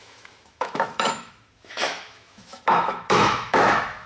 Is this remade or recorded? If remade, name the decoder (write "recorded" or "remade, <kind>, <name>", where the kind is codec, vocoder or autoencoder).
remade, autoencoder, DAC-VAE